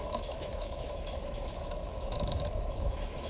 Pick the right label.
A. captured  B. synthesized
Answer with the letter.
B